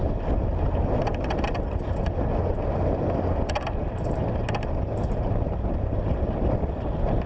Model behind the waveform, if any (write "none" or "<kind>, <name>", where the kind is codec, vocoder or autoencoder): none